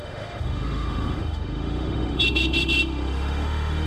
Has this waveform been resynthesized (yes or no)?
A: yes